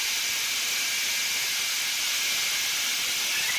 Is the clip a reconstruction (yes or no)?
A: no